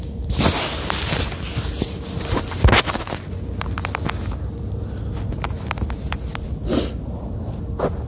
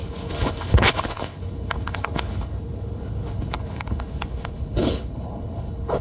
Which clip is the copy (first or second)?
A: second